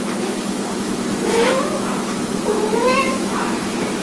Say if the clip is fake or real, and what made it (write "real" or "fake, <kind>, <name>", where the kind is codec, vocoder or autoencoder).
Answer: fake, autoencoder, DAC-VAE